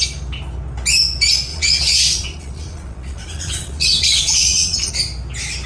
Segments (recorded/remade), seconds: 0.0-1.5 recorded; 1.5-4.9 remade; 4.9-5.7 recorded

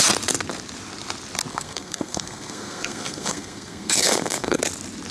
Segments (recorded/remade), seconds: 0.0-1.5 recorded; 1.5-4.6 remade; 4.6-5.1 recorded

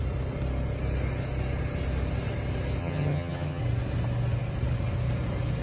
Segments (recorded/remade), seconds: 0.0-2.8 recorded; 2.8-3.6 remade; 3.6-5.6 recorded

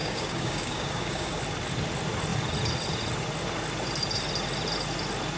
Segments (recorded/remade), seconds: 0.0-1.4 remade; 1.4-5.4 recorded

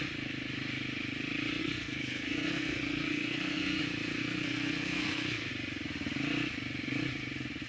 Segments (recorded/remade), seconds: 0.0-1.6 recorded; 1.6-3.8 remade; 3.8-4.2 recorded; 4.2-5.5 remade; 5.5-7.7 recorded

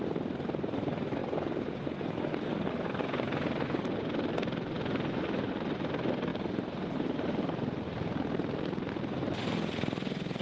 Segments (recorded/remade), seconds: 0.0-10.4 recorded